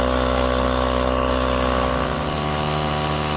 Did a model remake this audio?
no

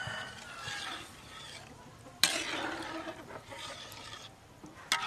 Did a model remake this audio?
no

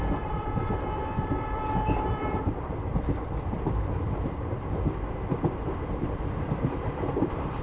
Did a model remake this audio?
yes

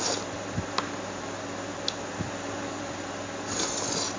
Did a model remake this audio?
no